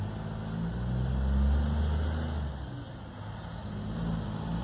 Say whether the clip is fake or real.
real